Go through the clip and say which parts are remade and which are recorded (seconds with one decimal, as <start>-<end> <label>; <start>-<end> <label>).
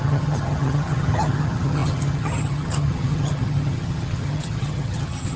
0.0-5.4 remade